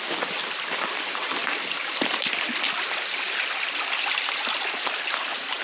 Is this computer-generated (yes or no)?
no